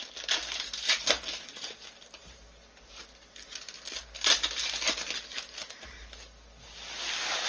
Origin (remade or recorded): recorded